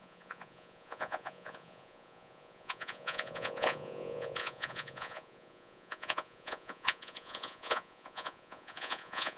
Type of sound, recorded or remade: remade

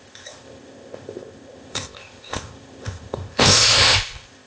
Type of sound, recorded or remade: remade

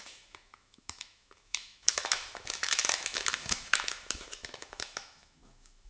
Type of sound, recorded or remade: remade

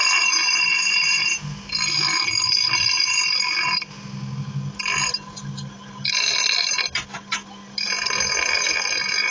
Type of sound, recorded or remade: recorded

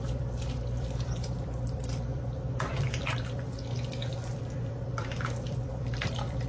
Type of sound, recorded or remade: remade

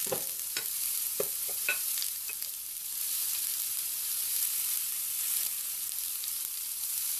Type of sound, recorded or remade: remade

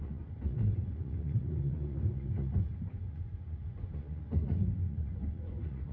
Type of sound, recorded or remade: remade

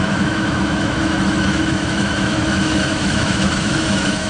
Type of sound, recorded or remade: remade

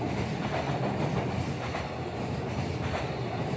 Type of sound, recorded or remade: recorded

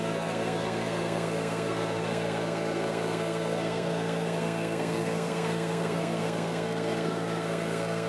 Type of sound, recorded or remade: remade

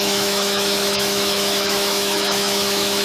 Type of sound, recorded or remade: remade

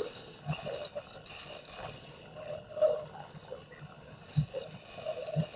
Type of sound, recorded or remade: remade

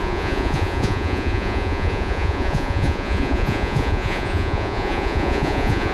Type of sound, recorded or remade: remade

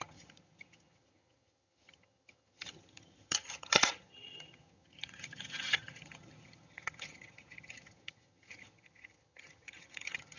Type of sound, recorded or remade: remade